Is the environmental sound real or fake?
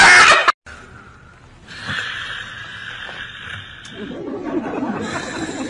real